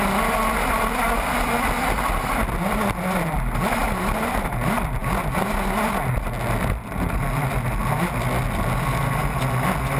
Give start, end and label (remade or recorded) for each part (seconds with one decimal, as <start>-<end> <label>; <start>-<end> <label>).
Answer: 0.0-10.0 recorded